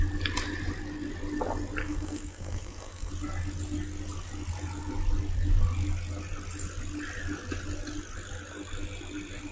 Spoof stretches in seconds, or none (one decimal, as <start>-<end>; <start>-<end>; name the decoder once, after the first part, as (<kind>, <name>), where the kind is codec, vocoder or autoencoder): 1.8-3.1 (codec, SNAC)